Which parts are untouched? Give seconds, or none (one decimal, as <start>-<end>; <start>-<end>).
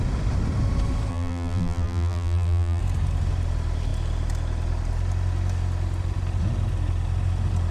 0.0-1.1; 2.8-7.7